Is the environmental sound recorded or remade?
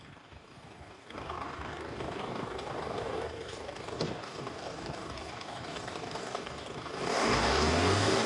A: remade